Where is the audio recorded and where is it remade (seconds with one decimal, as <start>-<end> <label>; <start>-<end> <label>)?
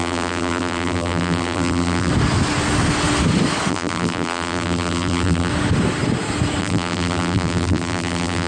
0.0-2.1 remade; 2.1-3.7 recorded; 3.7-5.5 remade; 5.5-6.6 recorded; 6.6-8.5 remade